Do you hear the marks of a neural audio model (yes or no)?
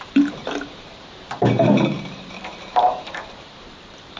yes